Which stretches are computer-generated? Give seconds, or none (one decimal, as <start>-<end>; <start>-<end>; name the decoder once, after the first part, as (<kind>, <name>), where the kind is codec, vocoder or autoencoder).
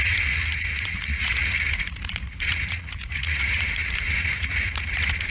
0.0-5.3 (vocoder, Vocos)